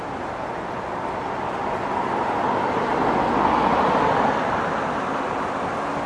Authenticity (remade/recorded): recorded